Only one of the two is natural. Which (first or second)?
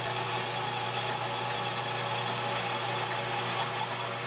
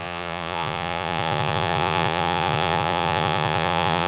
first